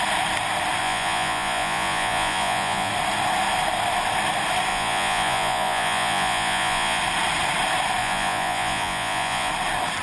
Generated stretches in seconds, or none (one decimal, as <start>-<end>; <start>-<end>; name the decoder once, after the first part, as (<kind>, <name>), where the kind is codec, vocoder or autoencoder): 0.8-2.9 (vocoder, Vocos); 4.7-7.0; 8.0-9.5